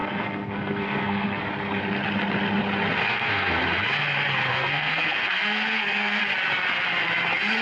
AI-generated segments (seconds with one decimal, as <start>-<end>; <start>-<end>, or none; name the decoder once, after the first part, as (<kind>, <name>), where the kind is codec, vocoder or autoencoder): 0.0-1.4 (codec, SNAC); 3.1-3.6; 4.5-6.2